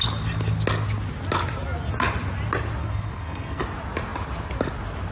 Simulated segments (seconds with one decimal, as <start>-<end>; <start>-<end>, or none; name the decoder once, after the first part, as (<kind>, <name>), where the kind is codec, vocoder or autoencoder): 2.8-3.6 (codec, SNAC)